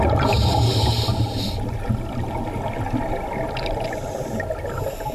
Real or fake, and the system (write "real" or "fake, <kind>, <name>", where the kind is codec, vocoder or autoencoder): real